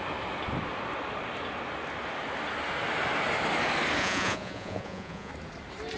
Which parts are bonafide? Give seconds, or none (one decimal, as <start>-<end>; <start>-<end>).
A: 0.0-4.0; 5.3-6.0